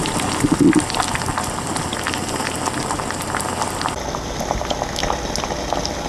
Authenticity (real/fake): real